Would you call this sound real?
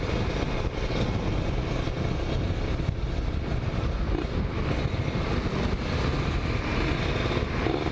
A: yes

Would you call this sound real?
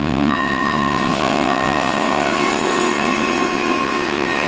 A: no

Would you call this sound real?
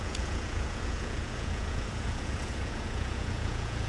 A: no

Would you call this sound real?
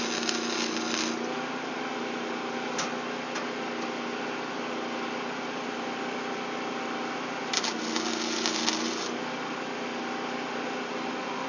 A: yes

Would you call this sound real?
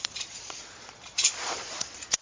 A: no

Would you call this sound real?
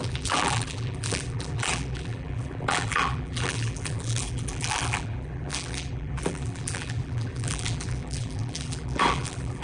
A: no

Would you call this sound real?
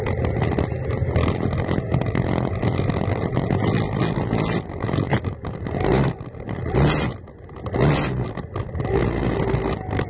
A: yes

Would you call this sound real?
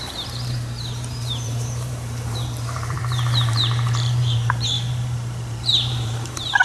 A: no